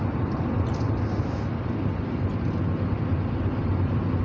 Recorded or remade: recorded